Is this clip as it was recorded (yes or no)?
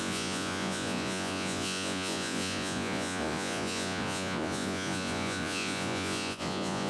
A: no